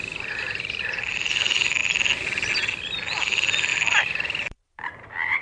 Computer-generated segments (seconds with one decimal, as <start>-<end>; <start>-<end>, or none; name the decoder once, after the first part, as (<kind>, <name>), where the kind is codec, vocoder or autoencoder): 3.7-5.4 (vocoder, BigVGAN v2)